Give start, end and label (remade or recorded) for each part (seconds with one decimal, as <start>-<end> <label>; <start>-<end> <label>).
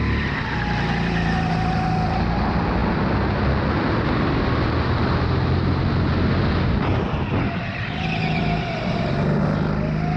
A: 0.0-10.2 recorded